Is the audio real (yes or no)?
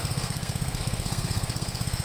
no